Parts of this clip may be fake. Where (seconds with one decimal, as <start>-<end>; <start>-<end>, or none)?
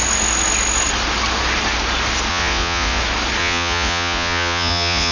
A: 2.3-3.0; 3.4-5.1